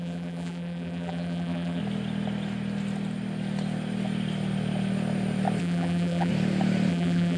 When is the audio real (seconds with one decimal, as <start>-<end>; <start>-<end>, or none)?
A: 1.8-5.6; 6.3-6.9